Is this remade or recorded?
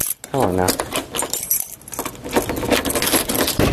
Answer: recorded